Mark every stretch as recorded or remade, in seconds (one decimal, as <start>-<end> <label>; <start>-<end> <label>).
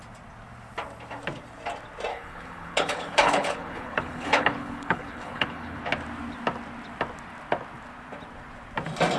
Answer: 0.0-2.1 recorded; 2.1-5.8 remade; 5.8-9.2 recorded